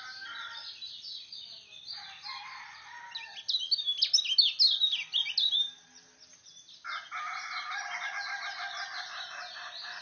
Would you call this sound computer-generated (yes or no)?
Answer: no